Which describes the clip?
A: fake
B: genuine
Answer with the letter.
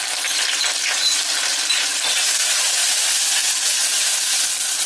B